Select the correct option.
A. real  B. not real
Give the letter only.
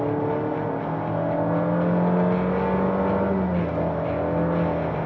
A